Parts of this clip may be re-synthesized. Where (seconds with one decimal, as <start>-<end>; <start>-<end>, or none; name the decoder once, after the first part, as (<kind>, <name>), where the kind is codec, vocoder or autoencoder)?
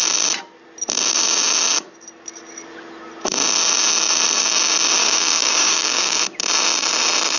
5.0-6.2 (codec, DAC)